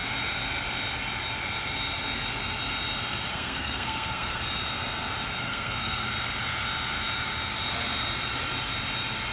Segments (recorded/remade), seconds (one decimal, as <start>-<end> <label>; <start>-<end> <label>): 0.0-3.3 recorded; 3.3-4.4 remade; 4.4-5.4 recorded; 5.4-6.1 remade; 6.1-9.3 recorded